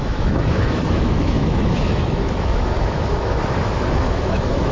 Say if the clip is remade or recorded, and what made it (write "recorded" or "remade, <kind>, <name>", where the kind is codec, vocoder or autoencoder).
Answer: remade, autoencoder, DAC-VAE